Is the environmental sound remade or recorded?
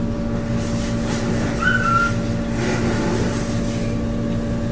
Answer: recorded